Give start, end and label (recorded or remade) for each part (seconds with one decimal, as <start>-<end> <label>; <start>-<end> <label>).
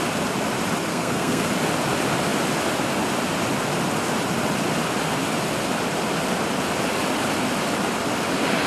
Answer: 0.0-0.9 recorded; 0.9-1.5 remade; 1.5-8.7 recorded